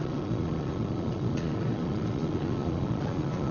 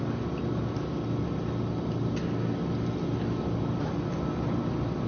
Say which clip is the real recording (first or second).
second